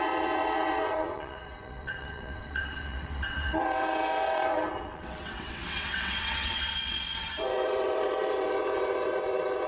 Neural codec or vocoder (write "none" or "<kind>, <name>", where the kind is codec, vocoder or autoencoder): vocoder, WaveNeXt